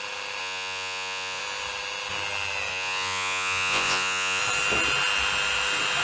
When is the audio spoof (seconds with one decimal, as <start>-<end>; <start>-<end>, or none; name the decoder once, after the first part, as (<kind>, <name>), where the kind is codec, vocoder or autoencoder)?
0.4-1.4 (vocoder, Vocos); 2.7-4.4